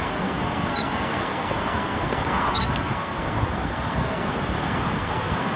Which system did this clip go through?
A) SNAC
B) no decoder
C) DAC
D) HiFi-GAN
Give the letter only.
A